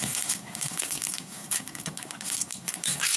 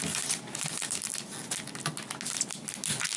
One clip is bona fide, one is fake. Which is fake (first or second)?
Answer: first